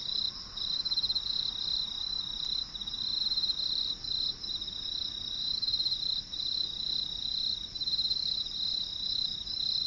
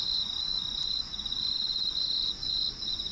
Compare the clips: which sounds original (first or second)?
first